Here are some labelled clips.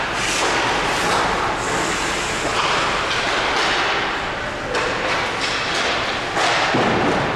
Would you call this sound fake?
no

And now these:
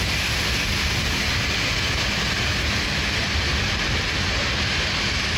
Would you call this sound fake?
no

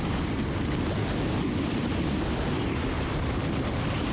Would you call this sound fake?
no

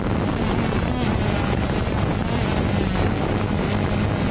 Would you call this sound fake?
no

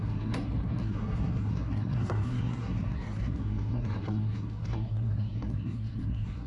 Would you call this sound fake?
yes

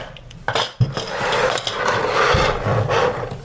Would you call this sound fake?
no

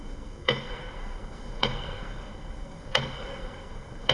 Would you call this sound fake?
yes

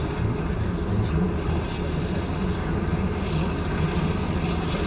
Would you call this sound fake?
no